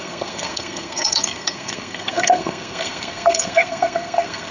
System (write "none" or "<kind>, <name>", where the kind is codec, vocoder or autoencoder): codec, SNAC